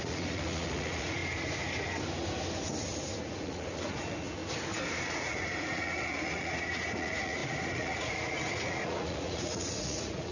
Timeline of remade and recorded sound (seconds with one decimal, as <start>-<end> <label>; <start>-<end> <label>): 0.0-1.2 remade; 1.2-3.2 recorded; 3.2-4.4 remade; 4.4-5.1 recorded; 5.1-10.3 remade